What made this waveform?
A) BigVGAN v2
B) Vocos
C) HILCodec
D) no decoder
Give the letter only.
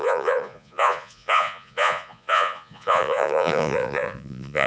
B